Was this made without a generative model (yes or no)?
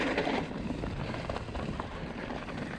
yes